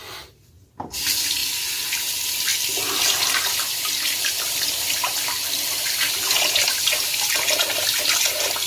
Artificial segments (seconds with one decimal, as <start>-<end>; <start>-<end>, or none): none